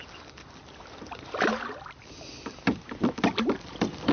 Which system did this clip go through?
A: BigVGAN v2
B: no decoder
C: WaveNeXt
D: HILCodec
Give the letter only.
B